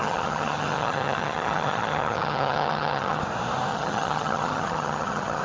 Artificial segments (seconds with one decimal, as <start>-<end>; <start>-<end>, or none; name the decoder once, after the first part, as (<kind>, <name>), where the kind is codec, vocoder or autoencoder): 0.0-3.2 (vocoder, HiFi-GAN); 3.7-5.4